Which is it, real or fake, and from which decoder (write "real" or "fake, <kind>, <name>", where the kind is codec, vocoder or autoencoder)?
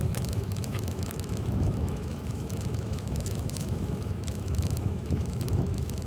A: fake, autoencoder, DAC-VAE